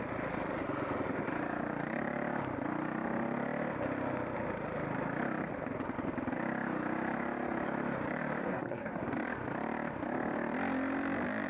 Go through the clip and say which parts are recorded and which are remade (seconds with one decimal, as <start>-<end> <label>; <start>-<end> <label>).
0.0-8.4 recorded; 8.4-9.0 remade; 9.0-11.5 recorded